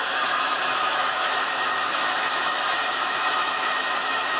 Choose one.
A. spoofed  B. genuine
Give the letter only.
A